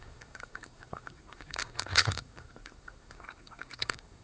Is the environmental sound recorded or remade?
remade